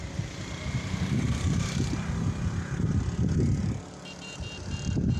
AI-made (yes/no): no